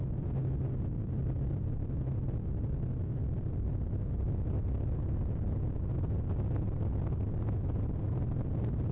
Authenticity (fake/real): real